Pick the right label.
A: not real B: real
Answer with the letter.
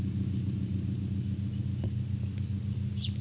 B